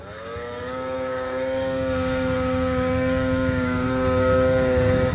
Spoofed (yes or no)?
yes